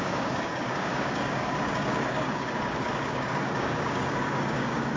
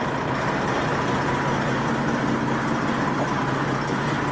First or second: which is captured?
second